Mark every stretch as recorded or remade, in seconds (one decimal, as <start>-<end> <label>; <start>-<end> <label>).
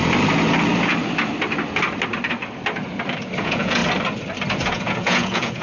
0.0-3.4 recorded; 3.4-3.8 remade; 3.8-4.5 recorded; 4.5-5.6 remade